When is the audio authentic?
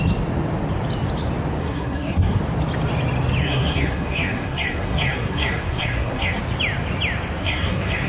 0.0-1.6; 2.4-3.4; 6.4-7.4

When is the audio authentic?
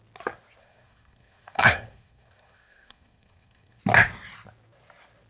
0.0-0.6; 3.8-5.3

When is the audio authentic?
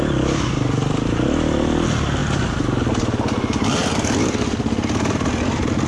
0.0-5.9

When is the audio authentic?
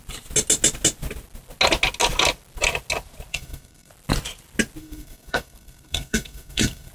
0.0-3.3; 3.9-4.8